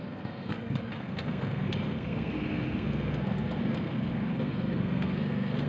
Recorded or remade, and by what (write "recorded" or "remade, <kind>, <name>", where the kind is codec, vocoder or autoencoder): remade, codec, SNAC